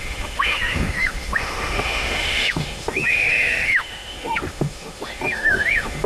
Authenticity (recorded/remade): remade